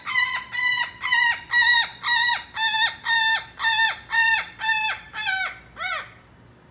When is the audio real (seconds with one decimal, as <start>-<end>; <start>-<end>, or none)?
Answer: 0.0-6.7